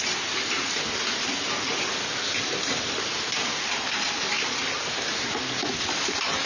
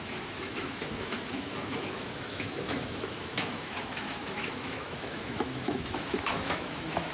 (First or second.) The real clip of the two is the first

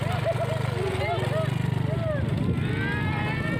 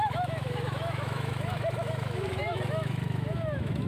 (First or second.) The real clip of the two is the first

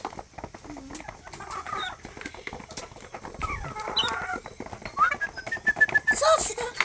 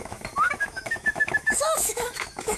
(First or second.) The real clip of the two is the first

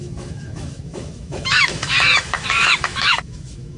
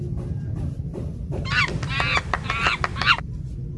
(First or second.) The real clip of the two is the second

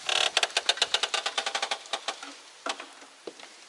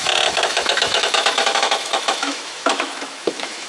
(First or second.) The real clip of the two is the first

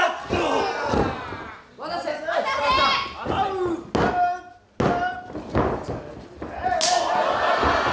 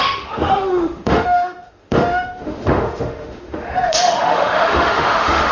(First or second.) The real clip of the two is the first